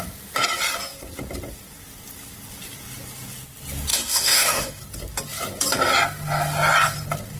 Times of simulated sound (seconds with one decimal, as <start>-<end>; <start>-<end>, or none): 3.9-4.8